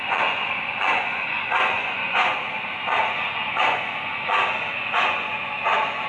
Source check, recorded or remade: remade